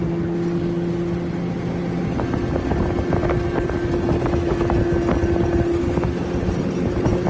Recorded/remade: recorded